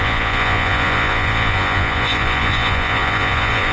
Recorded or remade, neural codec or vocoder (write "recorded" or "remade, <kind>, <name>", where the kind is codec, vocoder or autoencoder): remade, vocoder, Vocos